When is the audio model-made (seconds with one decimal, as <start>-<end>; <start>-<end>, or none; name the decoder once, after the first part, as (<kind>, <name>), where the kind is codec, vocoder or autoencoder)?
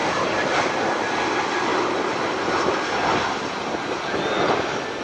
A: 0.0-0.7 (vocoder, BigVGAN v2)